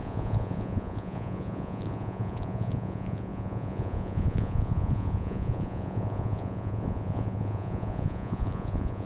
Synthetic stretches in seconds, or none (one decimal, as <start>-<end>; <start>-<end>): 0.0-9.1